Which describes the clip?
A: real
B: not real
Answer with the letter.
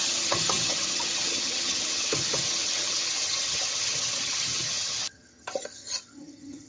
B